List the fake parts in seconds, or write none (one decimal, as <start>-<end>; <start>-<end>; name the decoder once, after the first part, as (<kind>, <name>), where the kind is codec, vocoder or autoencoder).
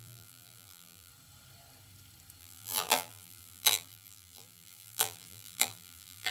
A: 0.0-1.1 (vocoder, BigVGAN v2); 2.4-6.3